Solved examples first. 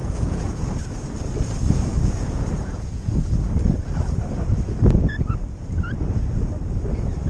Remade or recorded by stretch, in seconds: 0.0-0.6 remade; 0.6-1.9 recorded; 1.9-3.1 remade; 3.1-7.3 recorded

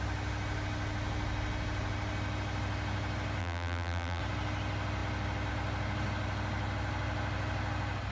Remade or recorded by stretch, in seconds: 0.0-3.4 recorded; 3.4-4.2 remade; 4.2-8.1 recorded

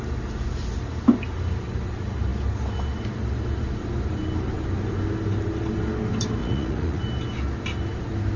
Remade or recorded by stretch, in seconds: 0.0-6.4 recorded; 6.4-7.0 remade; 7.0-8.4 recorded

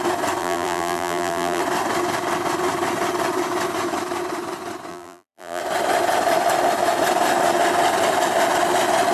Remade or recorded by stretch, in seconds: 0.0-0.4 recorded; 0.4-1.6 remade; 1.6-4.9 recorded; 4.9-5.6 remade; 5.6-9.1 recorded

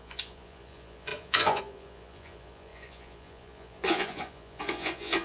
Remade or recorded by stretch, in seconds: 0.0-5.2 remade

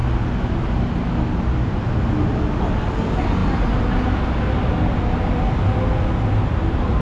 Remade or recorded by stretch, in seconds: 0.0-7.0 recorded

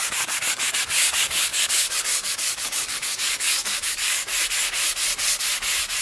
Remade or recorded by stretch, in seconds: 0.0-4.3 remade; 4.3-6.0 recorded